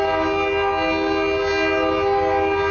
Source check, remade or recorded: recorded